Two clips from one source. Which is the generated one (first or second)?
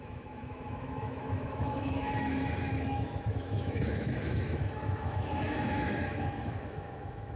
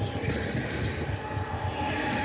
first